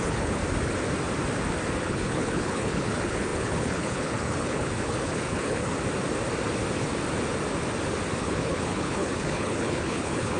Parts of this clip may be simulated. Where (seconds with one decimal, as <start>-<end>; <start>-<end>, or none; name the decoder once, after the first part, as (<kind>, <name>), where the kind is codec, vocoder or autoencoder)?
0.0-0.4 (codec, HILCodec); 1.8-5.7; 8.2-10.4